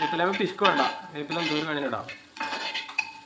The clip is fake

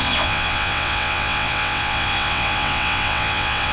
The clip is fake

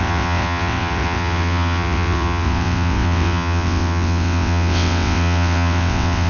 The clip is fake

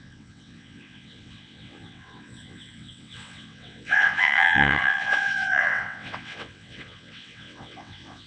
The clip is fake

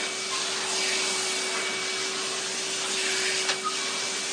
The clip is real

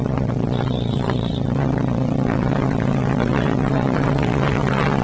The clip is fake